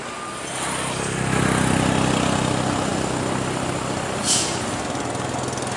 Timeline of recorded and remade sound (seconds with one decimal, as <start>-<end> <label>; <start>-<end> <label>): 0.0-5.8 recorded